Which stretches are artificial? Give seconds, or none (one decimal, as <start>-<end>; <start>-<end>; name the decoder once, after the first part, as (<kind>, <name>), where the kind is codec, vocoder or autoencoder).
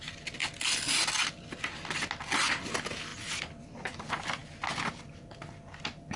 none